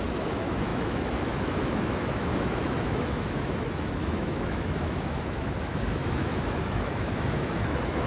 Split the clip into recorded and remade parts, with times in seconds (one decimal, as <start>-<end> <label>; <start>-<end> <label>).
0.0-8.1 remade